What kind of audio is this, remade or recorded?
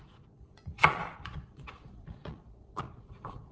remade